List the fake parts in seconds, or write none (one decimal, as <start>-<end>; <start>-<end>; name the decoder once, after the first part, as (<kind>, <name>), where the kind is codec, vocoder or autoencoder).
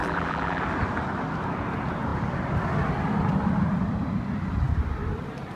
0.0-0.6 (vocoder, BigVGAN v2)